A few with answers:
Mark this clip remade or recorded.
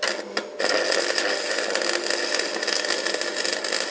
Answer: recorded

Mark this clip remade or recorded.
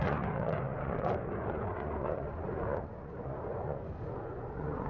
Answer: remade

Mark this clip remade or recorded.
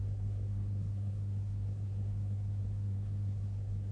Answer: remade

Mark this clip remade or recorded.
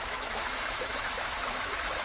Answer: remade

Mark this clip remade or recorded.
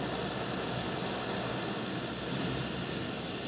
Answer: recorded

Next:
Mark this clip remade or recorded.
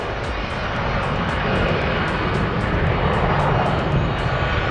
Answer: recorded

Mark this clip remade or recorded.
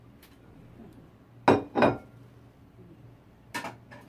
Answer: recorded